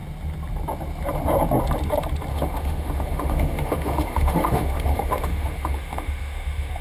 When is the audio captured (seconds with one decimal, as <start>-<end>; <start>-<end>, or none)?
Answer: 0.0-2.3